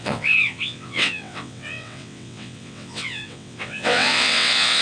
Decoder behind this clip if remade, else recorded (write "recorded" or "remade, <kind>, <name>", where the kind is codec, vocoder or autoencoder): remade, vocoder, WaveNeXt